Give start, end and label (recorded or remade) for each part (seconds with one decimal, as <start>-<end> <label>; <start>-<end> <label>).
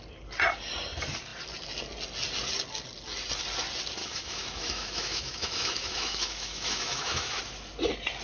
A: 0.0-4.0 recorded; 4.0-7.4 remade; 7.4-8.2 recorded